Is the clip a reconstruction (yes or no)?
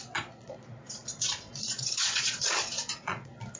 yes